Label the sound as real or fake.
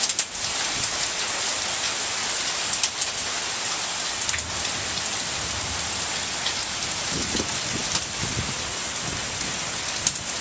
real